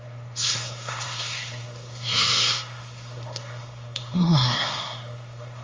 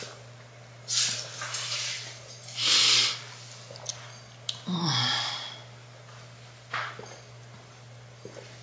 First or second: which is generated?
first